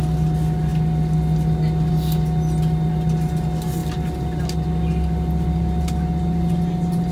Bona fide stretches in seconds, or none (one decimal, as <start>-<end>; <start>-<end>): 0.0-7.1